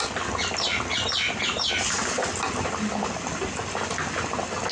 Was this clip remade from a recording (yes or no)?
no